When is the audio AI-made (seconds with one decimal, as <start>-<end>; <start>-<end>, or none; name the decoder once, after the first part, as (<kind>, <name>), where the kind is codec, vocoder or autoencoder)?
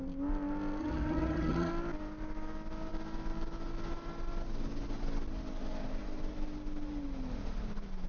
0.8-1.7 (vocoder, HiFi-GAN)